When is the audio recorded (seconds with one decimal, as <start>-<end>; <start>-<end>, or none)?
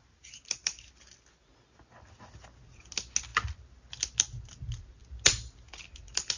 0.0-6.4